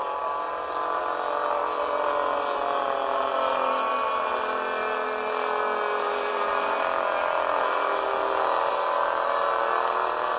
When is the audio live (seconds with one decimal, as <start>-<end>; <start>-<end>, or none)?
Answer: 0.0-10.4